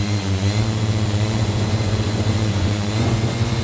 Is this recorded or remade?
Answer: remade